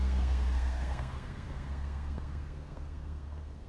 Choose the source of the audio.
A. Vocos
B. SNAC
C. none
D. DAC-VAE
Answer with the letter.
B